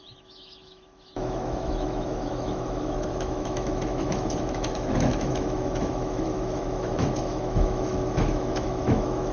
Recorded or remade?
remade